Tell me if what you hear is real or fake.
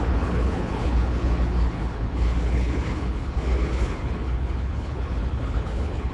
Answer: fake